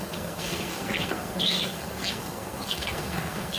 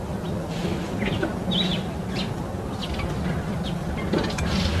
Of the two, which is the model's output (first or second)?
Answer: first